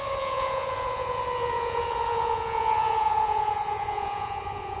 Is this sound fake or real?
fake